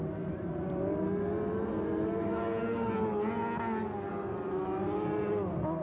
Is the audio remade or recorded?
recorded